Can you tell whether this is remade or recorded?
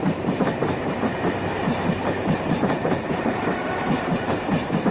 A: remade